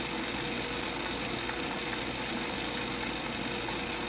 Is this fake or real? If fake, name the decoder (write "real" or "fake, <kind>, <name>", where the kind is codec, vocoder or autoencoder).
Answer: real